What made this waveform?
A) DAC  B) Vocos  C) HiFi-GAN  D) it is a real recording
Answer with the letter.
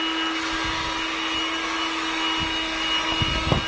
D